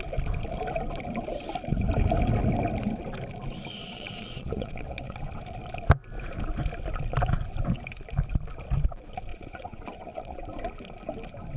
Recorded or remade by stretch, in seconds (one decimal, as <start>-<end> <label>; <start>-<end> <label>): 0.0-3.8 recorded; 3.8-5.2 remade; 5.2-9.3 recorded; 9.3-10.4 remade; 10.4-11.6 recorded